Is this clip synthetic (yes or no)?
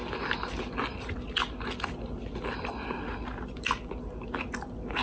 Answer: no